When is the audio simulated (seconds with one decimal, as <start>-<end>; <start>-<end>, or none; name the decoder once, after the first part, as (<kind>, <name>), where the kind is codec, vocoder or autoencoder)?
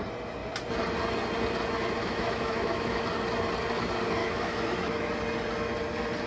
2.0-3.0 (autoencoder, DAC-VAE); 4.2-5.1